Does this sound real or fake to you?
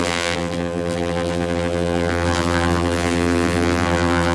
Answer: fake